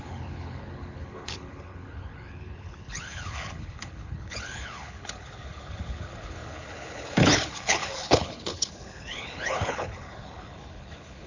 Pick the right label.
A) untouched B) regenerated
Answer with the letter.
B